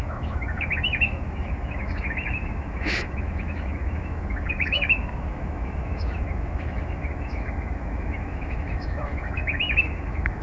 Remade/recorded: remade